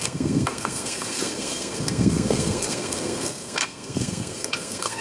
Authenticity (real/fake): fake